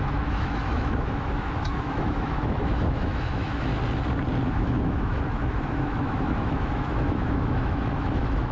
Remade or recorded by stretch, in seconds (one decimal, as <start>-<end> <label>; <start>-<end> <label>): 0.0-3.7 remade; 3.7-4.5 recorded; 4.5-8.5 remade